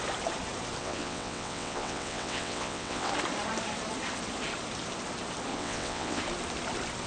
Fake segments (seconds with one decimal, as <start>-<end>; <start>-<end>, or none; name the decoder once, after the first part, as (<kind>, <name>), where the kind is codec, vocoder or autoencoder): 0.8-3.1 (vocoder, WaveNeXt); 5.5-6.2